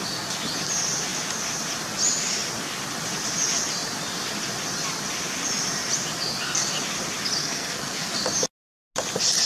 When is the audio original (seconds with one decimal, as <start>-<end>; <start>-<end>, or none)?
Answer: 0.0-7.4; 8.1-9.5